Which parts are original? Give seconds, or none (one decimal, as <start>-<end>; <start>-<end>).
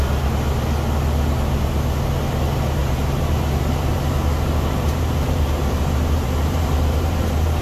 0.0-2.8